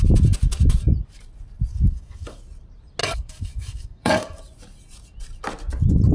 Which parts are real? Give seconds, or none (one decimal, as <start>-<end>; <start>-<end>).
0.0-1.7; 2.4-3.0; 4.4-6.1